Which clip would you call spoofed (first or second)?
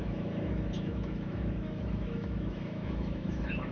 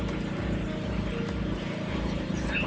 first